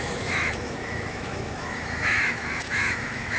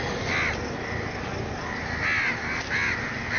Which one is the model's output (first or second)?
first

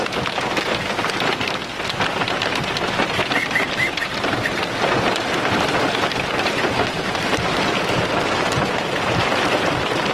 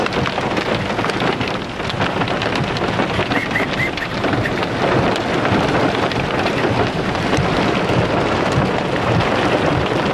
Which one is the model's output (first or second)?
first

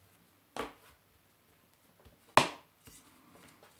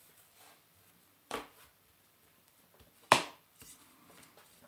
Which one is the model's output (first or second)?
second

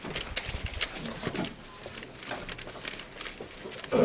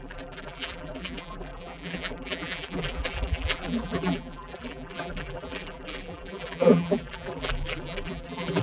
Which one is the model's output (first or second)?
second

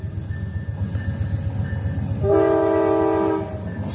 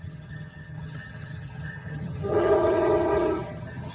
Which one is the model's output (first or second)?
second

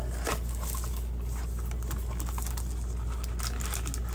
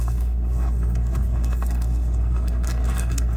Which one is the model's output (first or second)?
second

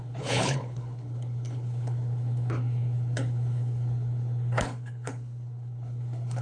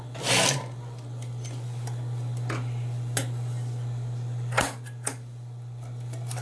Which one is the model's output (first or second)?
first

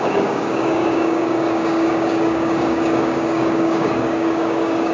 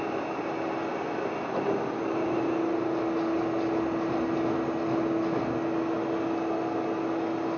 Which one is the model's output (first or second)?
first